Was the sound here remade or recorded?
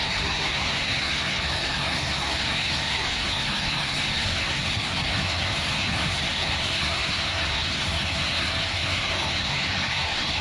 remade